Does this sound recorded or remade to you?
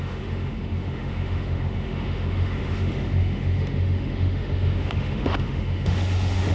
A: remade